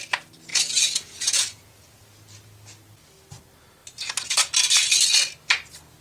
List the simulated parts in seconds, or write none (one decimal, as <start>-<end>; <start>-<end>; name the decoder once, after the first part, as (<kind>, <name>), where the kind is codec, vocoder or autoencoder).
0.5-2.0 (vocoder, Vocos)